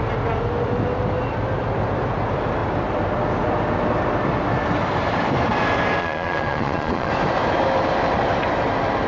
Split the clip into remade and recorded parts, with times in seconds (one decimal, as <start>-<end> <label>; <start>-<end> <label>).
0.0-6.0 recorded; 6.0-7.1 remade; 7.1-9.1 recorded